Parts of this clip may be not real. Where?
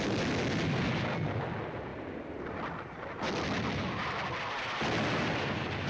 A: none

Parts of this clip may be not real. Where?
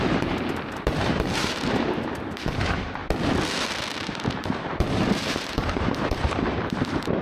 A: 0.0-3.0; 4.3-7.2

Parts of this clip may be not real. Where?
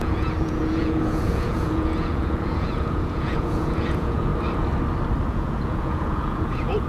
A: 0.0-4.3; 5.3-6.9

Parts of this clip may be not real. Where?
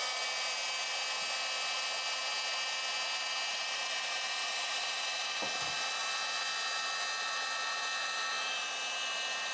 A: 3.5-5.4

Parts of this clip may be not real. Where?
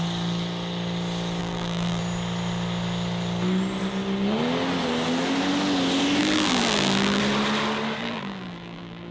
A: 1.4-2.0; 6.2-7.2; 8.0-9.1